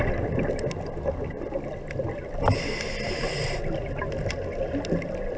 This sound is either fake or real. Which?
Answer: real